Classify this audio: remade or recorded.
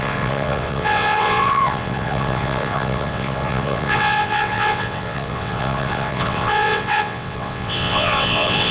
remade